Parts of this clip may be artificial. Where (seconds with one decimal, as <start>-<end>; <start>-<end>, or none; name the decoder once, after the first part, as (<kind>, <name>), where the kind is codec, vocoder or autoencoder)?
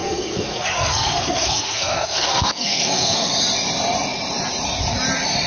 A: 0.0-3.3 (codec, SNAC)